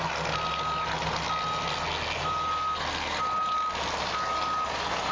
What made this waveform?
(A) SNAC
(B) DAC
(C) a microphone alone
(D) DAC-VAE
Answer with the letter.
C